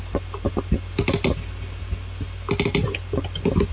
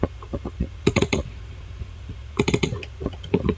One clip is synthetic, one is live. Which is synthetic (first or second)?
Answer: second